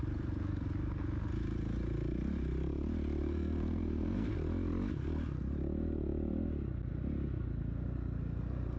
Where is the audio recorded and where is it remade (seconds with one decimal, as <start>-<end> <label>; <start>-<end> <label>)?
0.0-3.2 recorded; 3.2-4.3 remade; 4.3-8.8 recorded